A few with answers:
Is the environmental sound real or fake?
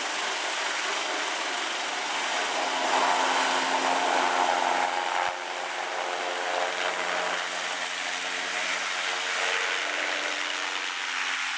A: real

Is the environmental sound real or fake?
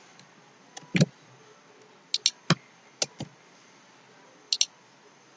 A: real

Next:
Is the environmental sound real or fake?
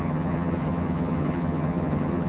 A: fake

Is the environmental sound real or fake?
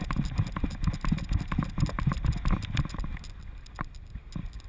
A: real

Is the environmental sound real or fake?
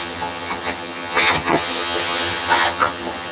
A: fake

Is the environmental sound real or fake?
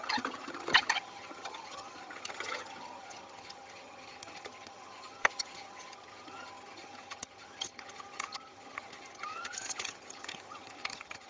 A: fake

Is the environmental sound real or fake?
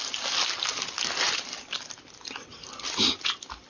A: real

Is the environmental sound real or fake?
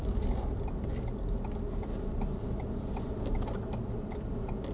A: real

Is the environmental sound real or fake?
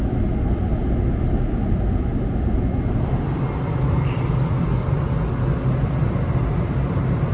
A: real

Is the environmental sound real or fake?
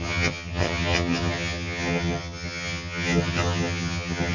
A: fake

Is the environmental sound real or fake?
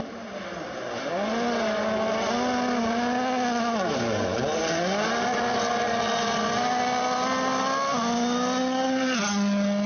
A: real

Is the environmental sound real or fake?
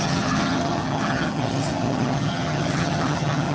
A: fake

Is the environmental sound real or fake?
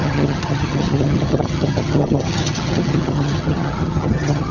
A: fake